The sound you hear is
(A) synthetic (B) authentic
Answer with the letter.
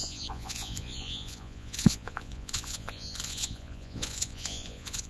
A